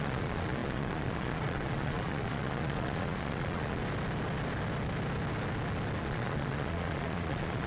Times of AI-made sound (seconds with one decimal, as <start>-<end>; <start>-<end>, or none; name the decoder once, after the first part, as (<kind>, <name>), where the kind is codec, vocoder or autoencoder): 0.0-3.8 (vocoder, Vocos); 6.0-7.7